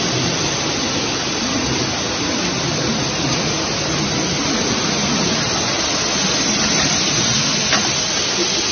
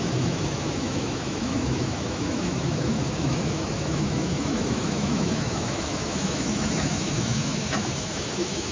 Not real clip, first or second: second